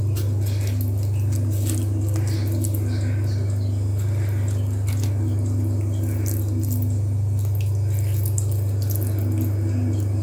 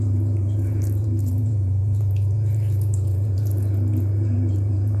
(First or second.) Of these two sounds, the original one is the first